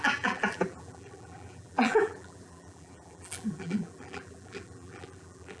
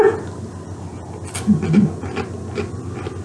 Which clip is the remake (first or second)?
first